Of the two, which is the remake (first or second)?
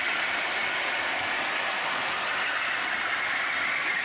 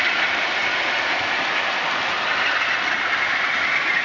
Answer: first